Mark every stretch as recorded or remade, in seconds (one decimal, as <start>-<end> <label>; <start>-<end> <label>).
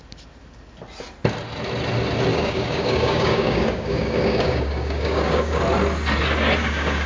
0.0-2.3 recorded; 2.3-5.6 remade; 5.6-6.6 recorded; 6.6-7.1 remade